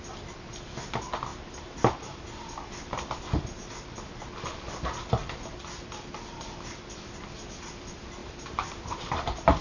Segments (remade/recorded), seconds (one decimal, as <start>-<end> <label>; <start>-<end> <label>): 0.0-1.3 recorded; 1.3-2.4 remade; 2.4-8.2 recorded; 8.2-9.6 remade